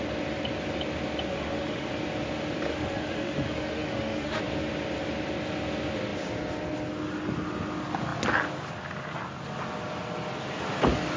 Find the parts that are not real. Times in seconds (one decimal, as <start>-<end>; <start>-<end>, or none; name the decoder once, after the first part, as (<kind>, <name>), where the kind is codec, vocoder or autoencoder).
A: 1.3-1.9 (autoencoder, DAC-VAE); 2.7-4.4

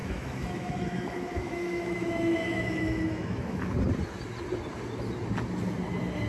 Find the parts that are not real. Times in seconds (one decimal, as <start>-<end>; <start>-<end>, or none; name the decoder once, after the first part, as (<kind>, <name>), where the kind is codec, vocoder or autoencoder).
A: 0.0-3.6 (autoencoder, DAC-VAE)

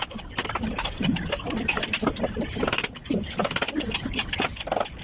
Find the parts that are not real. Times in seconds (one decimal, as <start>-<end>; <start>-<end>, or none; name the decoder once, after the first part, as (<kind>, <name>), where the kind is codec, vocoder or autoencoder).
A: none